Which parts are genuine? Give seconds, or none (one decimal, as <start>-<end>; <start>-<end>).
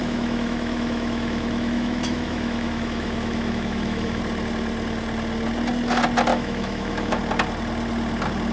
4.2-6.3; 7.2-8.5